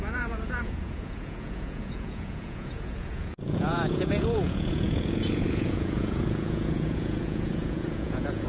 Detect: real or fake fake